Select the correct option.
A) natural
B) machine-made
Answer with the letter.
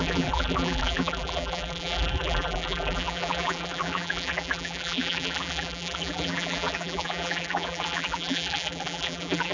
B